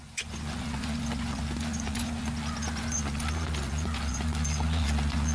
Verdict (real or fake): fake